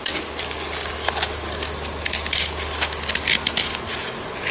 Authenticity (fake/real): real